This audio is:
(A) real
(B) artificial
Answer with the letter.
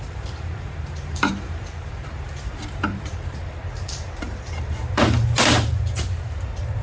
B